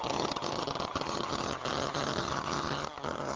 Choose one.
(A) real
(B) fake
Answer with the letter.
B